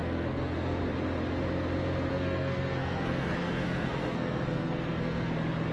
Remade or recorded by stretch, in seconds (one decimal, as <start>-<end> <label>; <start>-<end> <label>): 0.0-0.8 remade; 0.8-2.1 recorded; 2.1-5.3 remade; 5.3-5.7 recorded